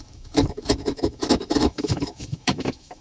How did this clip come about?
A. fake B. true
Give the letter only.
A